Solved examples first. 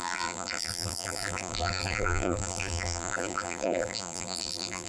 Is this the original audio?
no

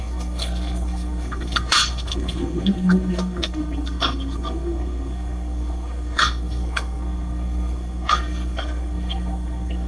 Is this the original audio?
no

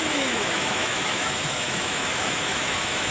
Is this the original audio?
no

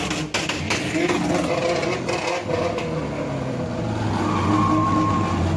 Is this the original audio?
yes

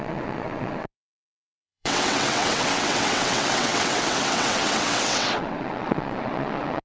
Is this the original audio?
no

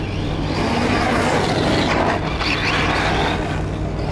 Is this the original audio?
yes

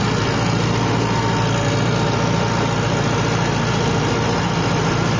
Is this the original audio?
yes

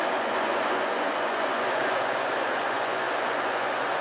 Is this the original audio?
no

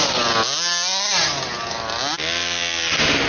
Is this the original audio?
yes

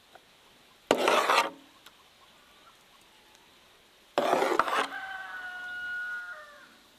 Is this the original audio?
yes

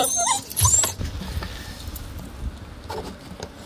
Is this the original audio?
yes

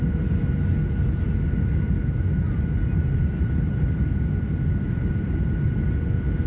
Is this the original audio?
yes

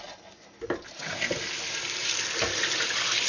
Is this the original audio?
yes